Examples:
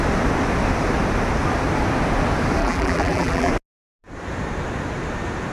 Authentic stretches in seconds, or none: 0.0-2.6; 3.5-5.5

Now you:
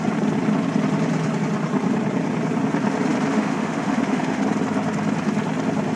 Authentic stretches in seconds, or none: 0.0-3.3; 4.4-6.0